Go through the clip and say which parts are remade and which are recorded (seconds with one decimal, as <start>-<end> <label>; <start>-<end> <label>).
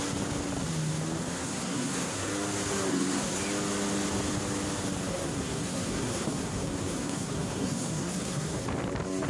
0.0-1.4 recorded; 1.4-2.3 remade; 2.3-2.9 recorded; 2.9-3.4 remade; 3.4-5.1 recorded; 5.1-8.6 remade; 8.6-9.3 recorded